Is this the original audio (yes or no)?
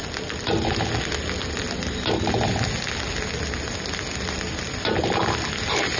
yes